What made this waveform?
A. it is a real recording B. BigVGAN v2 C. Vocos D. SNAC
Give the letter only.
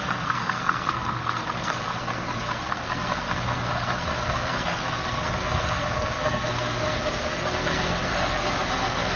D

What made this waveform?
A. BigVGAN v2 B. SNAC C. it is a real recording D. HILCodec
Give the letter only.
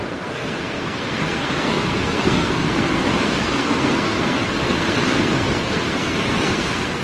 B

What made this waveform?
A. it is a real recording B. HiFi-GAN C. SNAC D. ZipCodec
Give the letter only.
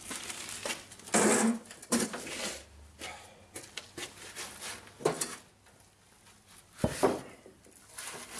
A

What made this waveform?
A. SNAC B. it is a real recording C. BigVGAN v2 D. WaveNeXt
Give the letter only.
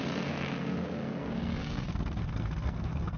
A